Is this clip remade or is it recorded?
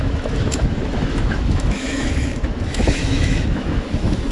remade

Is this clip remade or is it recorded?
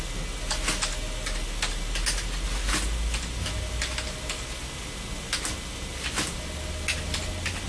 recorded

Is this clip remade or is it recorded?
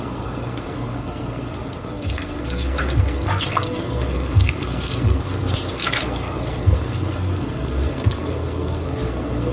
remade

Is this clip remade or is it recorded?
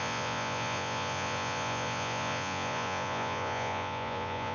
remade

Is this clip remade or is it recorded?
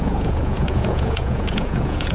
remade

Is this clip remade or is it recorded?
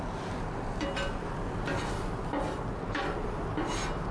recorded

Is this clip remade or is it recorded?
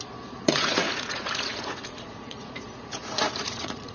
remade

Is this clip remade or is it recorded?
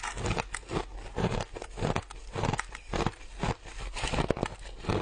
recorded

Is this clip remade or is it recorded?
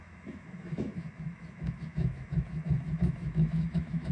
remade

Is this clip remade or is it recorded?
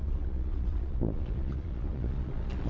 remade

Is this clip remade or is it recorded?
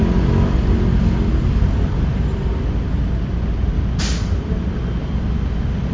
recorded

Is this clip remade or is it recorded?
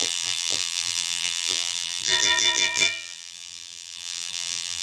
remade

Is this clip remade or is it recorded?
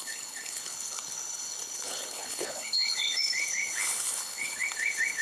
remade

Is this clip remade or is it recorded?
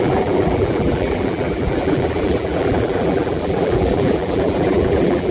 remade